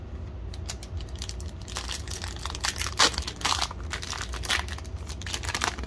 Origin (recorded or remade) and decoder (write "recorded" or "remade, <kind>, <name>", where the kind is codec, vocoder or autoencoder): recorded